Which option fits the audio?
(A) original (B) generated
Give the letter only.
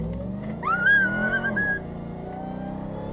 A